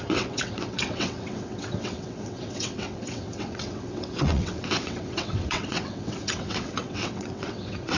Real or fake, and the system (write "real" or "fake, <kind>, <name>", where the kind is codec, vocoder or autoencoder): fake, vocoder, WaveNeXt